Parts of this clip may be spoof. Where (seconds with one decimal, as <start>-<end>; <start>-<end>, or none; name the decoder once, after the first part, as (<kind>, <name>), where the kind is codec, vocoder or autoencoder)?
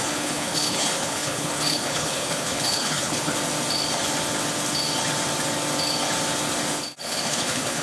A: 0.0-3.3 (codec, HILCodec); 7.0-7.8